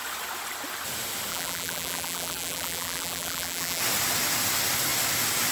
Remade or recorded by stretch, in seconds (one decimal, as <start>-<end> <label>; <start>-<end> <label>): 0.0-1.3 recorded; 1.3-3.8 remade; 3.8-5.5 recorded